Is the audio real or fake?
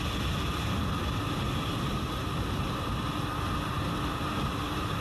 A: real